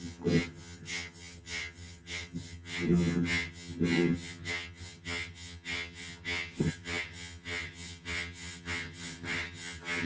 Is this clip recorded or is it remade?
remade